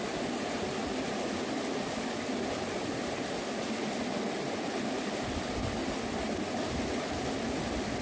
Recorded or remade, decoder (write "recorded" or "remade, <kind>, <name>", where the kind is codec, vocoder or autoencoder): recorded